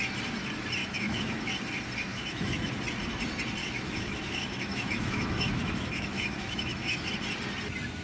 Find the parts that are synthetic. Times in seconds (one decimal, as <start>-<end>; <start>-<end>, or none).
0.8-1.5; 2.1-2.7; 3.6-7.1